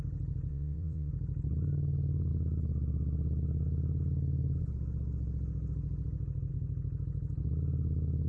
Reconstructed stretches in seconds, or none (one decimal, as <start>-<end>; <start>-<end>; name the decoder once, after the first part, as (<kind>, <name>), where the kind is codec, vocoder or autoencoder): 0.5-1.1 (vocoder, Vocos)